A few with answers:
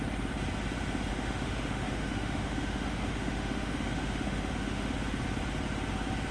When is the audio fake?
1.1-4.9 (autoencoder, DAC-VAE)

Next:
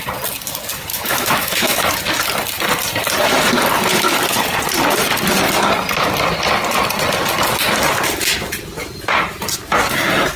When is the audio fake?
0.9-1.9 (autoencoder, DAC-VAE)

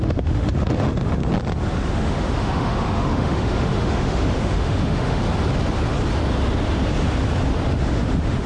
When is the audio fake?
0.0-1.2 (autoencoder, DAC-VAE); 1.9-5.2; 7.7-8.5

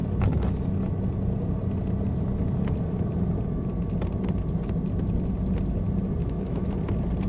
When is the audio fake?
6.2-6.7 (autoencoder, DAC-VAE)

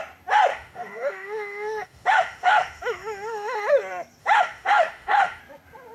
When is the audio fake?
0.5-3.7 (autoencoder, DAC-VAE); 4.2-5.4

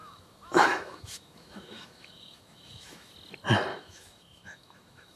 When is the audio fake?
0.0-3.1 (autoencoder, DAC-VAE); 3.7-5.2

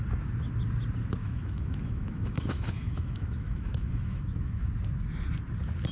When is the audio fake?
1.2-4.7 (autoencoder, DAC-VAE)